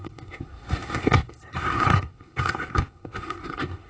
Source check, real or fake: fake